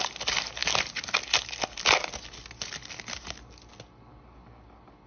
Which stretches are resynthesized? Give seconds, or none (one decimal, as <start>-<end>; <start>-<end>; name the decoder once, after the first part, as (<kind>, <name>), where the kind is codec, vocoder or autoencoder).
none